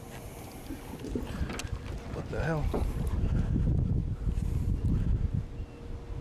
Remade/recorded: recorded